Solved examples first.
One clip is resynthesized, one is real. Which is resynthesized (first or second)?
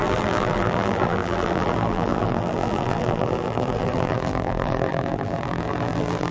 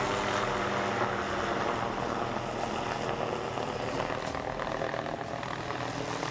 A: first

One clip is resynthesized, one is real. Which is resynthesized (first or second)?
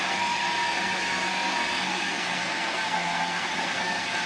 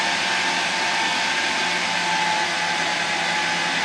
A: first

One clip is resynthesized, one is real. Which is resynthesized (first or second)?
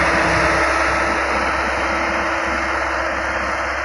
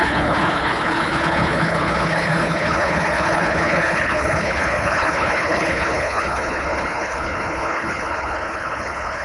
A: second